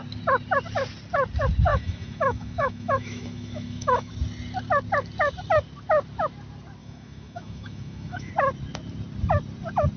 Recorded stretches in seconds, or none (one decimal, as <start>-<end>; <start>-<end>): 0.0-1.7; 4.1-6.8; 8.3-10.0